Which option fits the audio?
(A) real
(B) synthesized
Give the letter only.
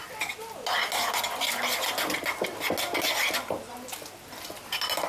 A